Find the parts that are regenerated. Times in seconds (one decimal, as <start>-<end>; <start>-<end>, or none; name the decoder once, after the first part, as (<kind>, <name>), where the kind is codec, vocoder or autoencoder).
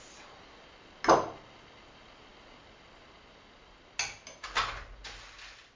none